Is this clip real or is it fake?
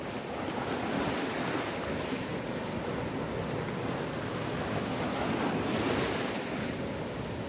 real